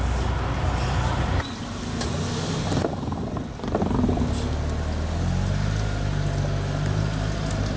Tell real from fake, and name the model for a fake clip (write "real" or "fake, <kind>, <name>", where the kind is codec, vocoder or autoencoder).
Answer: real